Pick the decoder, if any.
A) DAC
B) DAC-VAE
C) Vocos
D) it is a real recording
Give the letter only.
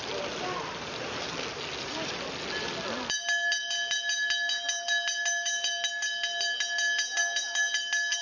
D